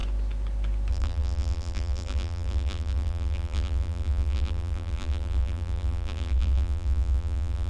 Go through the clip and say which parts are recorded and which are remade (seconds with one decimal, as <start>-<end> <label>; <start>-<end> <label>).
0.0-0.9 recorded; 0.9-7.7 remade